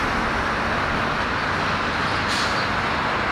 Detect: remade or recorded recorded